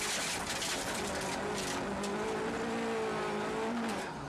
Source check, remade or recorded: recorded